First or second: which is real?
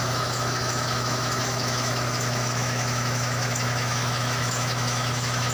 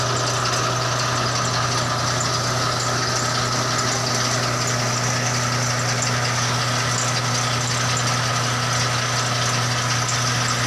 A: second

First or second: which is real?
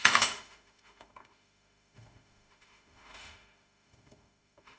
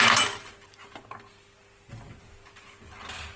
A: second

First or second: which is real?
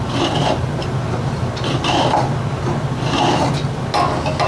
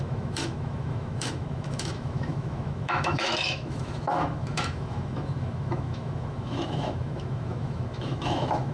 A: first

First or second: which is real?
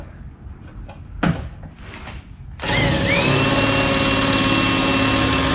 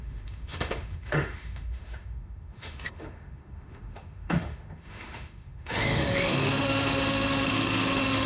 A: first